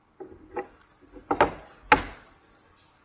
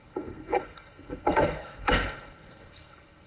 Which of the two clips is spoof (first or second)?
second